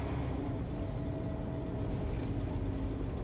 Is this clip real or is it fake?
real